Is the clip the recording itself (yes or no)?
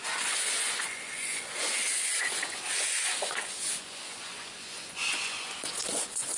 no